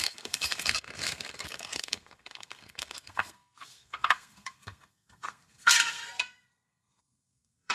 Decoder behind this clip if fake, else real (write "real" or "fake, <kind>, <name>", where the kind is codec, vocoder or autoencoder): fake, codec, SNAC